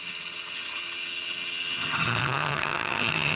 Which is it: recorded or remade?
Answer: remade